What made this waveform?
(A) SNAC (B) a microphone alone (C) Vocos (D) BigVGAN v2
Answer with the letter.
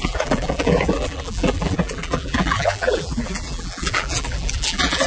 D